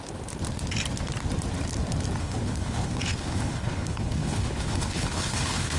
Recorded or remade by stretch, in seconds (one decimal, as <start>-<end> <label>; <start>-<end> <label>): 0.0-2.2 recorded; 2.2-5.8 remade